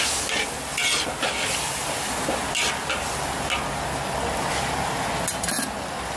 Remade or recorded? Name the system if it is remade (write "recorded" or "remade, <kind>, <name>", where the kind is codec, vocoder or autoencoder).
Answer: recorded